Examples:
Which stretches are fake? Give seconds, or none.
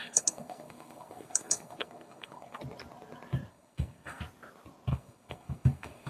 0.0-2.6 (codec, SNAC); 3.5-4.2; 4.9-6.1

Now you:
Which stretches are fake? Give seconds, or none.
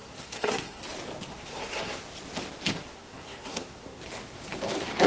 0.0-0.8 (codec, SNAC); 1.3-2.0; 2.7-4.0